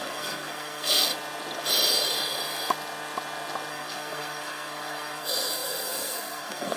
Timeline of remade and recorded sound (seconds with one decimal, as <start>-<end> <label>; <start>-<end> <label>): 0.0-1.1 remade; 1.1-3.7 recorded; 3.7-6.8 remade